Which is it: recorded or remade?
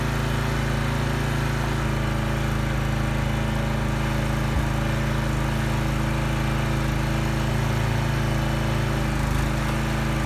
recorded